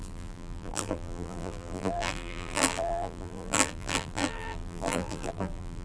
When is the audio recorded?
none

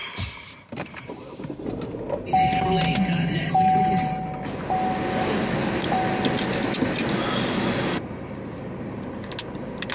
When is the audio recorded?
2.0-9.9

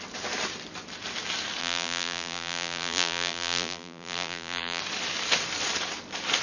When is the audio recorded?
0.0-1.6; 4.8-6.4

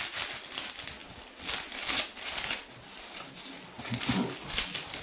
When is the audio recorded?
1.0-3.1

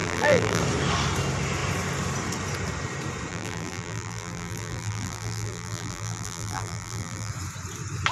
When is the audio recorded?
0.6-3.3; 7.3-8.1

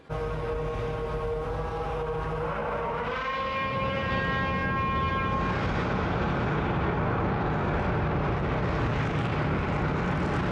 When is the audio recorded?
0.0-2.6; 4.1-10.5

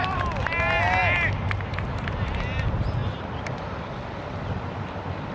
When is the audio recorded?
0.0-5.3